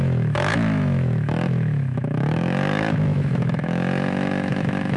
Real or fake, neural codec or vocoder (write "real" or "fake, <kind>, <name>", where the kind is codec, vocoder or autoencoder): fake, autoencoder, DAC-VAE